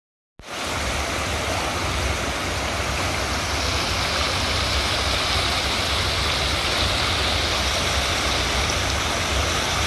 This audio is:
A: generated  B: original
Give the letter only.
B